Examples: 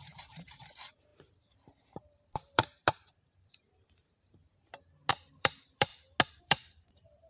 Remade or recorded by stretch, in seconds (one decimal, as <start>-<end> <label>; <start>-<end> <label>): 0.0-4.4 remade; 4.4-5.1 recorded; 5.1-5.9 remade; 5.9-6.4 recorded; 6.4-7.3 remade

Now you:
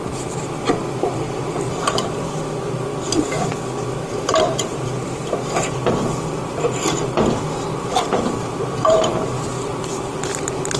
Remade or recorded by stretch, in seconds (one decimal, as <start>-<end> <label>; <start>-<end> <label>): 0.0-5.8 remade; 5.8-7.7 recorded; 7.7-9.1 remade; 9.1-9.9 recorded; 9.9-10.8 remade

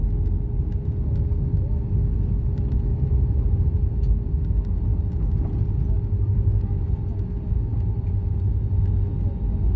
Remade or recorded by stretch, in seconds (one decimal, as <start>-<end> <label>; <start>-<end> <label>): 0.0-2.9 recorded; 2.9-3.9 remade; 3.9-7.7 recorded; 7.7-8.7 remade; 8.7-9.8 recorded

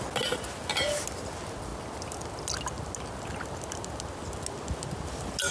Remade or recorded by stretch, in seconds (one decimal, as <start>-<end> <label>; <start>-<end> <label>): 0.0-5.5 recorded

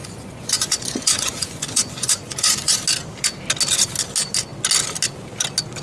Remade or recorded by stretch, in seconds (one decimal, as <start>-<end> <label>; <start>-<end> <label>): 0.0-2.8 remade; 2.8-5.8 recorded

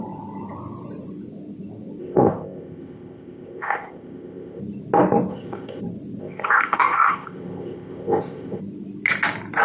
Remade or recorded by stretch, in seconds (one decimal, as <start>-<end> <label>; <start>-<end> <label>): 0.0-2.0 recorded; 2.0-4.6 remade; 4.6-5.3 recorded; 5.3-5.8 remade; 5.8-6.2 recorded; 6.2-8.6 remade; 8.6-9.6 recorded

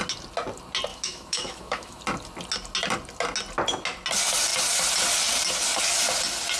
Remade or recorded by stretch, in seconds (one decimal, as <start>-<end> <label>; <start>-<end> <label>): 0.0-0.9 recorded; 0.9-2.0 remade; 2.0-6.6 recorded